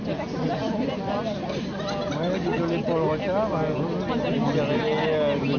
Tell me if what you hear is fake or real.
real